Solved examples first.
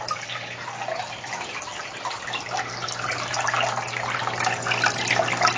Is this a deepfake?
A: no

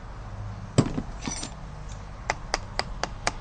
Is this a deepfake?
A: no